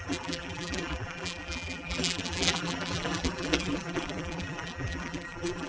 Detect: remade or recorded remade